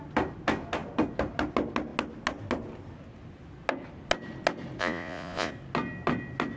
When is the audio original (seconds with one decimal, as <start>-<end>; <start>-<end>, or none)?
0.0-4.8; 5.5-6.6